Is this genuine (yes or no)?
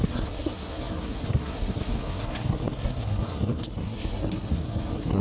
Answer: no